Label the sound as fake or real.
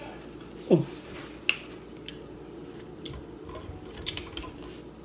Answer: real